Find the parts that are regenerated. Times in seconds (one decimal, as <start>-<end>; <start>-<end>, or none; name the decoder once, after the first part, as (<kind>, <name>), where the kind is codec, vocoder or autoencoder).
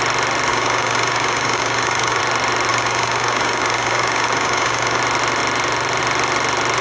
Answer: 0.5-2.2 (codec, DAC); 2.7-5.0